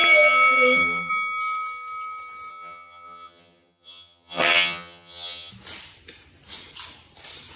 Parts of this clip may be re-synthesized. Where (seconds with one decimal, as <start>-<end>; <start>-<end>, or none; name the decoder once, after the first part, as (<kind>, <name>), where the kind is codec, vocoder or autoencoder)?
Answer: 0.0-1.1 (vocoder, HiFi-GAN); 2.5-5.5

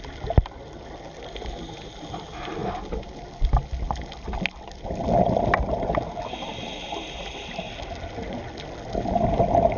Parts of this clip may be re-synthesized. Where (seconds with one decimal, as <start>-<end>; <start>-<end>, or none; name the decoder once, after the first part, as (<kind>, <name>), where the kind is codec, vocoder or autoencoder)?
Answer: none